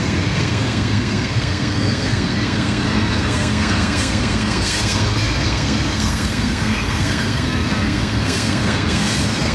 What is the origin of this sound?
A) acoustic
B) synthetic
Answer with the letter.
B